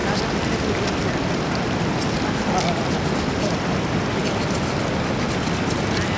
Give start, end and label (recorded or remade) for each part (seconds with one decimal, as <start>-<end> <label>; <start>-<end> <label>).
0.0-6.2 recorded